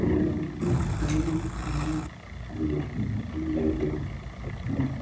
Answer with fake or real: real